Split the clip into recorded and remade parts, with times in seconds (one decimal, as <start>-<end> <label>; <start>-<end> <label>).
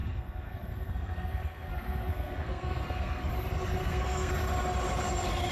0.0-3.3 remade; 3.3-3.8 recorded; 3.8-4.3 remade; 4.3-5.5 recorded